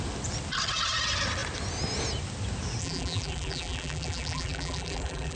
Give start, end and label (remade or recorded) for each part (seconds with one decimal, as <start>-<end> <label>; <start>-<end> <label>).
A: 0.0-2.8 recorded; 2.8-5.4 remade